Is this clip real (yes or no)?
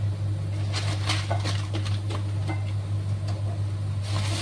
yes